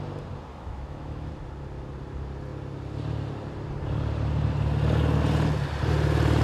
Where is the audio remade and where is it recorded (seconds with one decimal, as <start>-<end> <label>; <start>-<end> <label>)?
0.0-0.5 recorded; 0.5-1.3 remade; 1.3-6.4 recorded